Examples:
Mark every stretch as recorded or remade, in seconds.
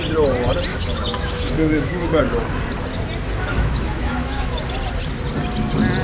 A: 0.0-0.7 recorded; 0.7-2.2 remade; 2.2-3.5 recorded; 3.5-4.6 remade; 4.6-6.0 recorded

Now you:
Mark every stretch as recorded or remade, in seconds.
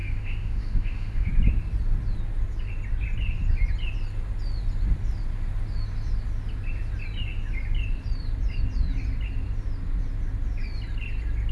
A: 0.0-1.3 remade; 1.3-11.5 recorded